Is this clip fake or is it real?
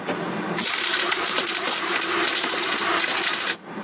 fake